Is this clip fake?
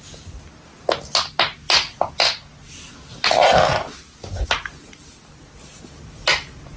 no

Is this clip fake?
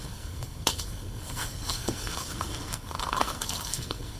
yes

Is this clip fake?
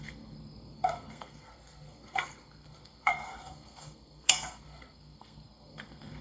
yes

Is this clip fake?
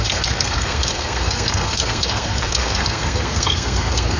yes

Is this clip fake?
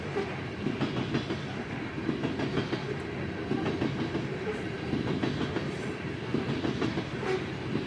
no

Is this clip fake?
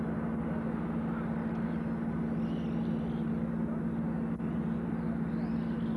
no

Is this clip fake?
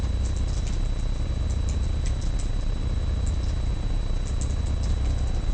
no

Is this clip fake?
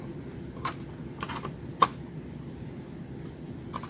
no